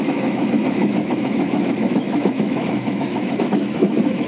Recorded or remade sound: remade